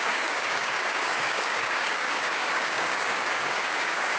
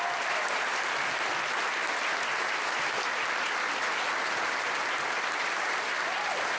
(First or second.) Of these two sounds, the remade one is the first